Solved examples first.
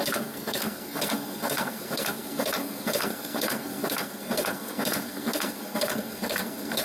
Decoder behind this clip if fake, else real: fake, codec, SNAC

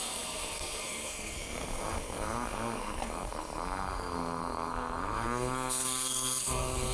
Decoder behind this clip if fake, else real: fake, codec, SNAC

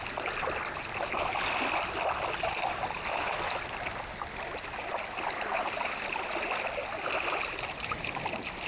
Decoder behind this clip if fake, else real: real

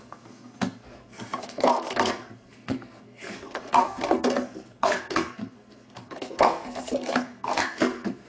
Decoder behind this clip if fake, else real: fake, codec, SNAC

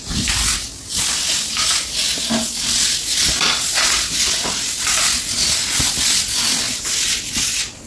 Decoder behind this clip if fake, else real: real